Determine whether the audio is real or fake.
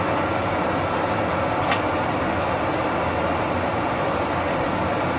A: real